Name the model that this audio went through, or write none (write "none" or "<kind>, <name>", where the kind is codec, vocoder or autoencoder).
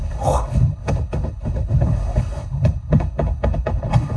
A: codec, HILCodec